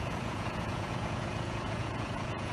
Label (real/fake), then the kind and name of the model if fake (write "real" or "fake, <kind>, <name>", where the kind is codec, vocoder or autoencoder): fake, vocoder, Vocos